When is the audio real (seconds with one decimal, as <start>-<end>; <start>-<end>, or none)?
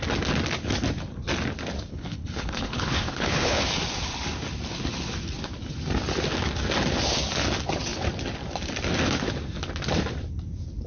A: 0.0-1.9; 3.6-10.9